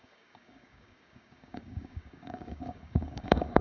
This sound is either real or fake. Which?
fake